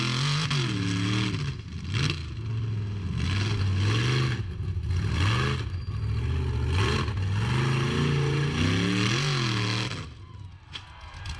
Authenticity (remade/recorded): recorded